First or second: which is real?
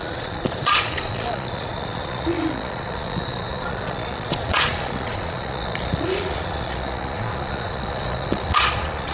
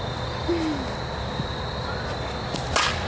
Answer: second